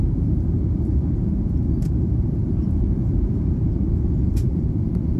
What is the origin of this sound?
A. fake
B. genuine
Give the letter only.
A